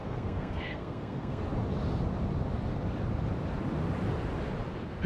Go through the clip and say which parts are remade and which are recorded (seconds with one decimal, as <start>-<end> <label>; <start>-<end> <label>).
0.0-1.4 remade; 1.4-5.1 recorded